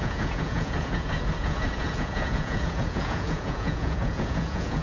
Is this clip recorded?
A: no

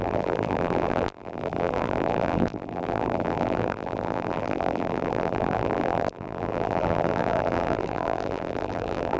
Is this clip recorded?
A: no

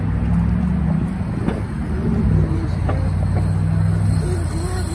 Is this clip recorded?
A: yes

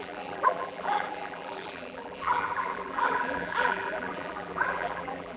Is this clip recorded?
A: no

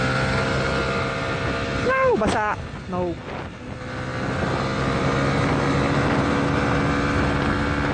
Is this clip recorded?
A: yes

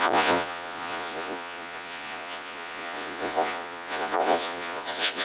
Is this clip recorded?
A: no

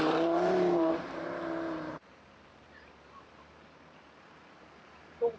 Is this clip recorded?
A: no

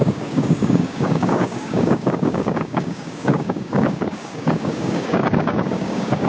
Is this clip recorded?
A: no